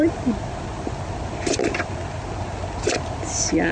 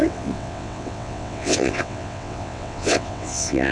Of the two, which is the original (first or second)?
first